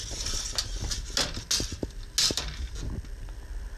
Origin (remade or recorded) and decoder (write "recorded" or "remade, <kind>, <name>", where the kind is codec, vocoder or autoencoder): recorded